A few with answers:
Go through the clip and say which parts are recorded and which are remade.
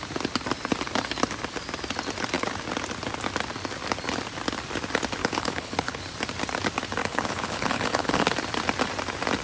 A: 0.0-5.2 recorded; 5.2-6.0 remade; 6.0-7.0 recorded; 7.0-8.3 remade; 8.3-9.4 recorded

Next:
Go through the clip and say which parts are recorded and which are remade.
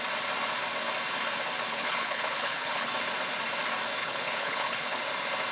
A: 0.0-1.7 recorded; 1.7-2.9 remade; 2.9-4.0 recorded; 4.0-5.0 remade; 5.0-5.5 recorded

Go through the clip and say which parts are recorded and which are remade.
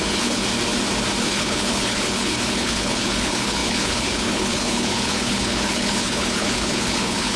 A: 0.0-0.4 remade; 0.4-1.2 recorded; 1.2-7.4 remade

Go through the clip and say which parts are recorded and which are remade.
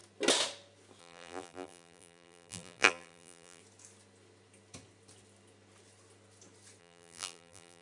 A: 0.0-1.0 recorded; 1.0-3.6 remade; 3.6-6.8 recorded; 6.8-7.8 remade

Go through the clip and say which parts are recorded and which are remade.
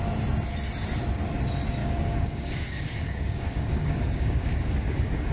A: 0.0-1.8 recorded; 1.8-5.3 remade